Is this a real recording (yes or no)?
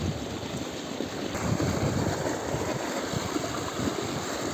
yes